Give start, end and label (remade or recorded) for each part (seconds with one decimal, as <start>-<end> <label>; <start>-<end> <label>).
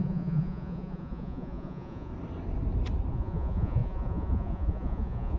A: 0.0-2.1 remade; 2.1-3.1 recorded; 3.1-5.4 remade